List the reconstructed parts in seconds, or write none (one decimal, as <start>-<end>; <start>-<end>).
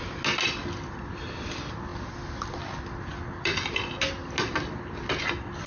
none